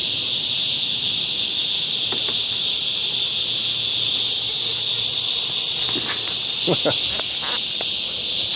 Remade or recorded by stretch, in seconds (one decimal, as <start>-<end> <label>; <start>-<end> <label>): 0.0-0.8 remade; 0.8-8.6 recorded